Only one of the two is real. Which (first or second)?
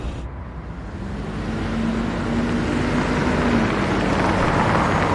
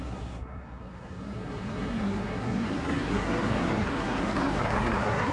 first